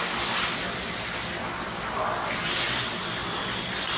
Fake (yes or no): no